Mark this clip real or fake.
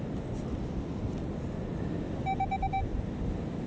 real